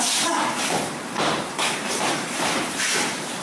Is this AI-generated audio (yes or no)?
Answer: yes